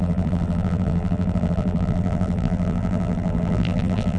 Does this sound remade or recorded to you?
remade